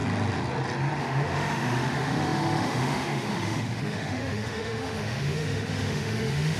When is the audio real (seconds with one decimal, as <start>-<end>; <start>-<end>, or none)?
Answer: 0.0-1.0